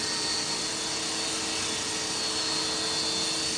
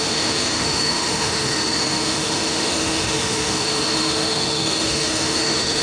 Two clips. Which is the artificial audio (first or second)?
second